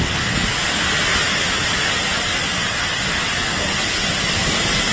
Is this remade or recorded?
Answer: recorded